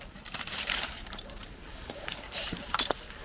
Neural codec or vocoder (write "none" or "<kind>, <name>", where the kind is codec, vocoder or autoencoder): vocoder, BigVGAN v2